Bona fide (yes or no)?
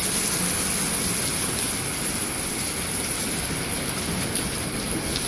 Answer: yes